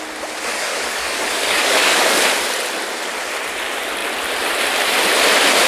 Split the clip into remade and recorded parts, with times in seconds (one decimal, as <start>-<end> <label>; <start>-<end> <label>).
0.0-0.5 recorded; 0.5-2.2 remade; 2.2-5.7 recorded